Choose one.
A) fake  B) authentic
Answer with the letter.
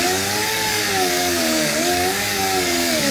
A